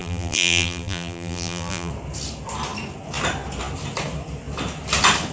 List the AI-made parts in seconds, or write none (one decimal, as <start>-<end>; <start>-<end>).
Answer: 0.0-1.9